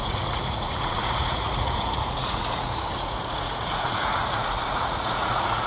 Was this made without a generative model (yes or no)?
no